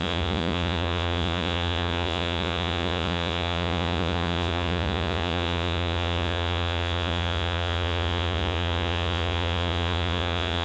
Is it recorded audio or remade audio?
remade